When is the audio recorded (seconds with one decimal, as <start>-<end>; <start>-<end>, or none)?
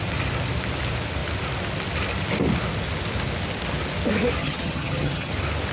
0.0-4.4; 5.3-5.7